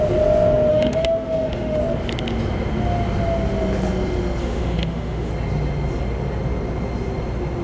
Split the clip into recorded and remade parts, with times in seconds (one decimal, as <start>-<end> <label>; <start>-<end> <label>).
0.0-0.7 recorded; 0.7-1.8 remade; 1.8-4.4 recorded; 4.4-5.3 remade; 5.3-7.6 recorded